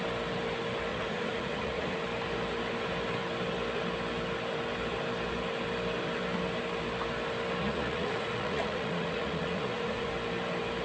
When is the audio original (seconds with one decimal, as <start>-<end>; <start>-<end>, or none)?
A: 0.0-0.9; 2.0-7.6; 10.1-10.8